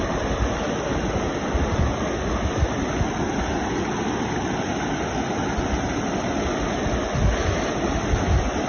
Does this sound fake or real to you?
real